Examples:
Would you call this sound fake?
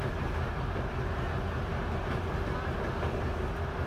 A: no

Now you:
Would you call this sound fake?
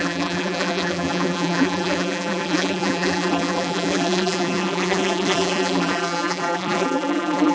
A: yes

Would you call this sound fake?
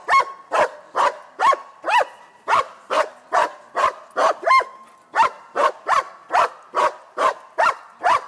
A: no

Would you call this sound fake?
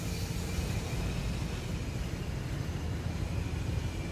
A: no